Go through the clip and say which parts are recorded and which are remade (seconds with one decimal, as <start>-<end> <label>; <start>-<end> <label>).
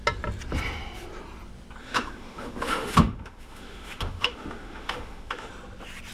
0.0-1.8 recorded; 1.8-5.5 remade; 5.5-6.1 recorded